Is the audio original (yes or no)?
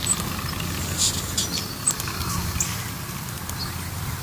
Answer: yes